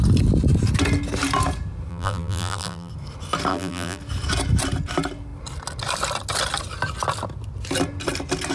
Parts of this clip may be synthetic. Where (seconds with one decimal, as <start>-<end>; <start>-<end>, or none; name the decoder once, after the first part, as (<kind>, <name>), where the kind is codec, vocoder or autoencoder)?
1.9-2.9 (vocoder, BigVGAN v2); 3.5-4.0